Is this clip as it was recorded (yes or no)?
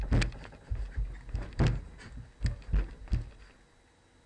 yes